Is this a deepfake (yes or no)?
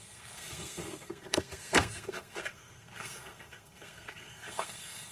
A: yes